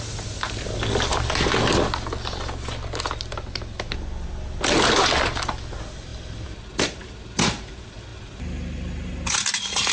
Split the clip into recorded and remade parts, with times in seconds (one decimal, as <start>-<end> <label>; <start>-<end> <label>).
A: 0.0-9.9 recorded

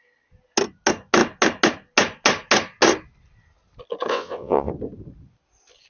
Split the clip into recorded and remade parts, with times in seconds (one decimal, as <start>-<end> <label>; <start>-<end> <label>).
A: 0.0-4.1 recorded; 4.1-4.7 remade; 4.7-5.9 recorded

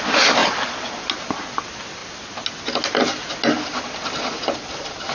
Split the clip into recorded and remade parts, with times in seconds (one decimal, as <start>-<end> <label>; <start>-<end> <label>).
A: 0.0-5.1 recorded

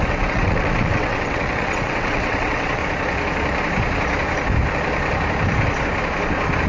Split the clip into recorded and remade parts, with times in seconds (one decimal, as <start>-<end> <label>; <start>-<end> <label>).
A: 0.0-2.8 remade; 2.8-6.7 recorded